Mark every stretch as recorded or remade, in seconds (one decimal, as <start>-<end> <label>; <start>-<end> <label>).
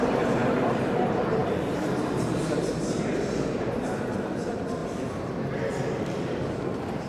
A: 0.0-4.8 remade; 4.8-6.0 recorded; 6.0-6.4 remade; 6.4-7.1 recorded